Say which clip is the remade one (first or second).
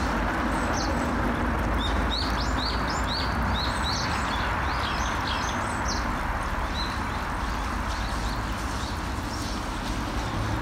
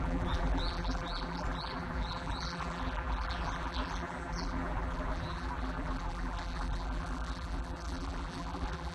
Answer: second